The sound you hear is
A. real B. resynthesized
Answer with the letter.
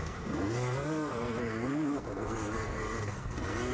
B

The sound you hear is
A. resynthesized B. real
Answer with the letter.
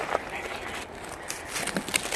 B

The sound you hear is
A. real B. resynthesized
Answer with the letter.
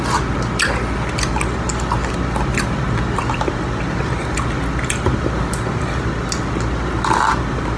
A